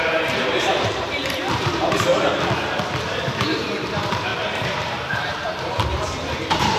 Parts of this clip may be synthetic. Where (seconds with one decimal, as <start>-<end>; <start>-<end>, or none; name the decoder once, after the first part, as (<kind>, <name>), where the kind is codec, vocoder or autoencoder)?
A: 0.0-2.1 (vocoder, BigVGAN v2); 3.0-6.8